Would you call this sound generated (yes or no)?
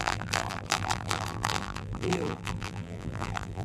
yes